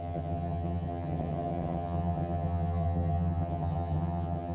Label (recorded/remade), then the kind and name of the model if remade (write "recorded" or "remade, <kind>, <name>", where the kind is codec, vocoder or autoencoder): remade, vocoder, HiFi-GAN